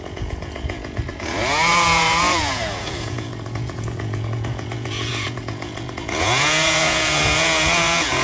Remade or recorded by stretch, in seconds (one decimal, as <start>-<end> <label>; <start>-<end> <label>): 0.0-8.2 remade